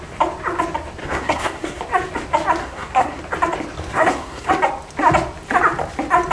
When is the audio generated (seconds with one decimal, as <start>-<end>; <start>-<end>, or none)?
1.0-1.8; 2.6-3.2; 3.9-4.5